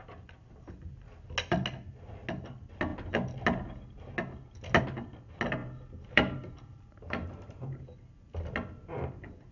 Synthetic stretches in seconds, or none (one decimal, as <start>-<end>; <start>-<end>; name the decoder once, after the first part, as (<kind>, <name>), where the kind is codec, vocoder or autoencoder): 5.6-7.8 (vocoder, BigVGAN v2)